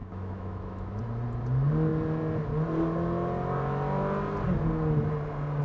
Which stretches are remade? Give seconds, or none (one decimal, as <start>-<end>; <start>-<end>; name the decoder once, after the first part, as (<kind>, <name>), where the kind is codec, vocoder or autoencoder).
0.0-1.0 (autoencoder, DAC-VAE)